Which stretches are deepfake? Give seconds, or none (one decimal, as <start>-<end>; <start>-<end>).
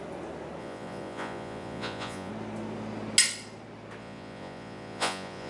0.6-2.3; 4.0-5.5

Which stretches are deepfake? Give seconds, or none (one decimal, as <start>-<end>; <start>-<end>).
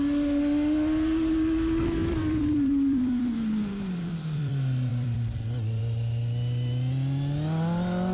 2.0-4.5; 4.9-5.8